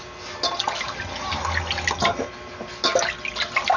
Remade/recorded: recorded